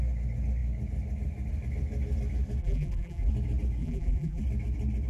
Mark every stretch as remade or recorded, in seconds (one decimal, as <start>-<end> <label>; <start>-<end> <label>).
0.0-2.6 recorded; 2.6-3.3 remade; 3.3-3.8 recorded; 3.8-4.4 remade; 4.4-5.1 recorded